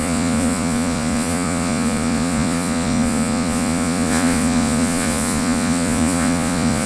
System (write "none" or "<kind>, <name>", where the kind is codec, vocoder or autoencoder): vocoder, Vocos